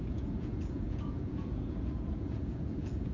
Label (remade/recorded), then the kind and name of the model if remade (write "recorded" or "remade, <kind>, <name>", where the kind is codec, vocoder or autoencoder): remade, vocoder, Vocos